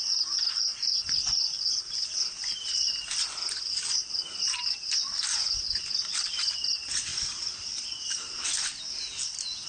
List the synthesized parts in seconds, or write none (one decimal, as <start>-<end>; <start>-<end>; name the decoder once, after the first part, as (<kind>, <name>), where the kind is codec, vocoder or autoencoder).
0.7-2.6 (vocoder, BigVGAN v2); 7.1-8.0